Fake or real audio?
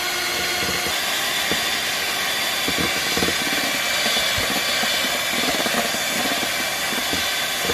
real